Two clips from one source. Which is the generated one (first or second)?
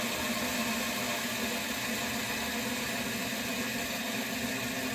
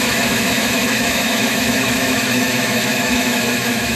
second